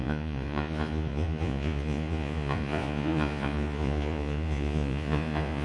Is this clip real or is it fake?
fake